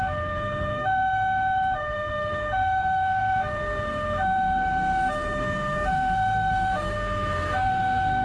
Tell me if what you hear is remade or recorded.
remade